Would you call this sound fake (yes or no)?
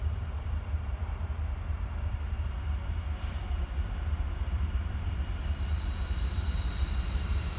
yes